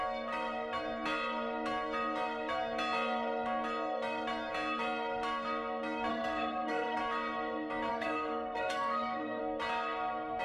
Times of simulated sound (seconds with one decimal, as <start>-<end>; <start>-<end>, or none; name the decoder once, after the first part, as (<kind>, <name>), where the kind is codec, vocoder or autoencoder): 6.1-7.0 (codec, SNAC); 7.9-9.4